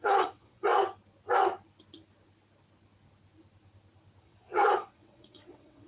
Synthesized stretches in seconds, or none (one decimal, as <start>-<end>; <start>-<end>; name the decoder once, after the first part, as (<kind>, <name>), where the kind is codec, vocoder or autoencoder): 0.0-0.7 (vocoder, WaveNeXt); 4.2-5.9